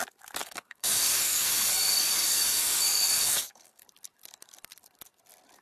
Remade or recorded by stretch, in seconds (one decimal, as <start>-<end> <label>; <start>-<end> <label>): 0.0-0.4 recorded; 0.4-3.8 remade; 3.8-5.6 recorded